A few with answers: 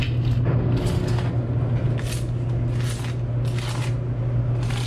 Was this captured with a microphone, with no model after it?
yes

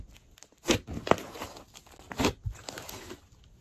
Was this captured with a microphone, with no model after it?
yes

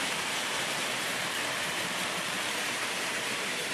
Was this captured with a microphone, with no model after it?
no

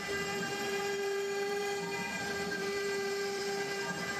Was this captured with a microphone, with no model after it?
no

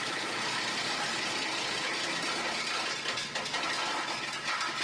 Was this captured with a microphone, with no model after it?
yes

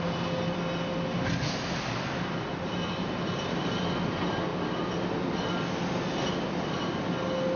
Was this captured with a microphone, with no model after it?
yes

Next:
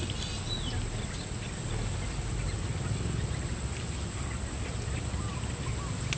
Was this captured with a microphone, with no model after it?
yes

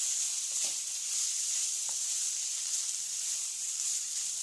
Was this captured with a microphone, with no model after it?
no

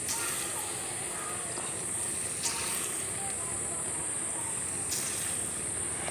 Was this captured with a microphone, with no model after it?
yes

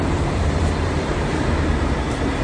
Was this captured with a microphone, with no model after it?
no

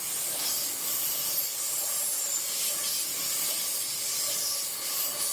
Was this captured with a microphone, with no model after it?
yes